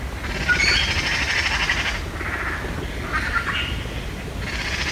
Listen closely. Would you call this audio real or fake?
real